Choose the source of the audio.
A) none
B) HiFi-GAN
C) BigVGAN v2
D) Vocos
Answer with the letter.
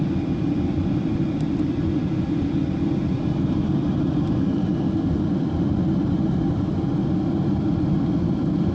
A